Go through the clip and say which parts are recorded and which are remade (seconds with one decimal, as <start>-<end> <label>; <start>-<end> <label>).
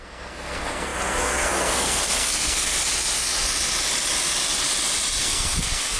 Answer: 0.0-2.8 remade; 2.8-5.2 recorded; 5.2-6.0 remade